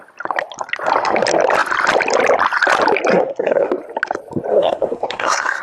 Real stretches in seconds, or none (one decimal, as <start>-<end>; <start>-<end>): 0.0-3.1; 3.7-4.5